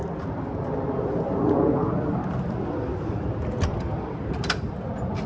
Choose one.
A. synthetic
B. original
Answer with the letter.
B